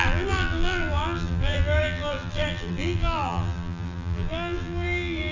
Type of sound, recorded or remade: remade